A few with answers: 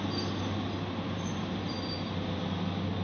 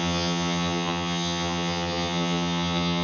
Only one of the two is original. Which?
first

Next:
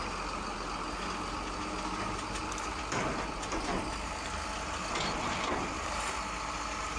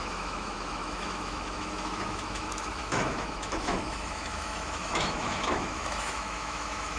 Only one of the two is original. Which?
first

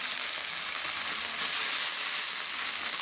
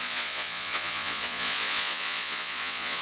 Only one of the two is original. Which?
first